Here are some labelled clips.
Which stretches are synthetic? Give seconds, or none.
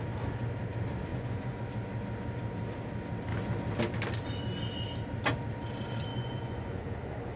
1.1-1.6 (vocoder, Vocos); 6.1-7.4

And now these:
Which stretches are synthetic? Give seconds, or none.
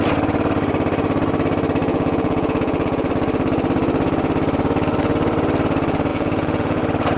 1.8-3.1 (vocoder, Vocos); 6.1-6.8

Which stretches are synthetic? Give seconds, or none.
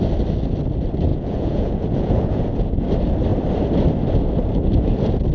1.1-2.8 (vocoder, Vocos)